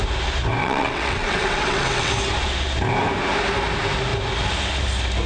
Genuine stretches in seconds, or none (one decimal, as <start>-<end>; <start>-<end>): 0.0-0.6; 2.1-5.3